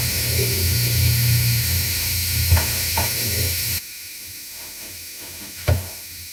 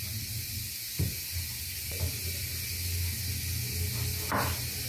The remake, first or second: first